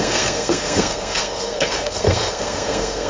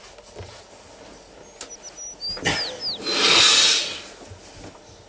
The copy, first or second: first